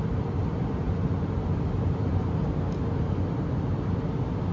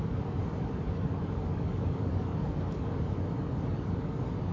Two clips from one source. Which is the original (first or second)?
first